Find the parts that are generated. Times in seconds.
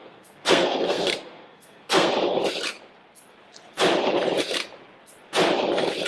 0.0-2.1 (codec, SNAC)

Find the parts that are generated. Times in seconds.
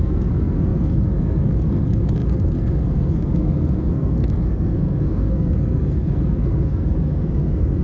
0.0-7.8 (codec, SNAC)